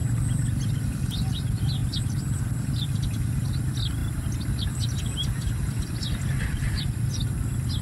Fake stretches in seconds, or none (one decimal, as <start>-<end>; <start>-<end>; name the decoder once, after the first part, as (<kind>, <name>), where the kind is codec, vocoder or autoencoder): 0.7-4.0 (vocoder, BigVGAN v2); 6.4-7.2